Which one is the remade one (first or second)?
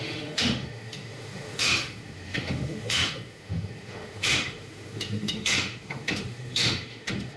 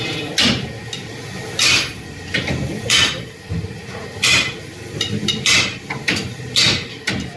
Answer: first